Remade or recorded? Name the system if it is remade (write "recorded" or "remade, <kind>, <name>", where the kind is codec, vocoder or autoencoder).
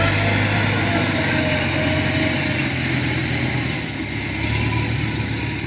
recorded